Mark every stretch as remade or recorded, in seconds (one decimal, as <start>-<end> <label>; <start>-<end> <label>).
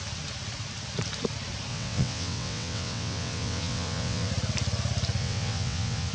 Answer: 0.0-1.7 recorded; 1.7-4.3 remade; 4.3-5.2 recorded; 5.2-6.1 remade